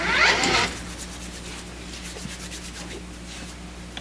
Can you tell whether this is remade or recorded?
recorded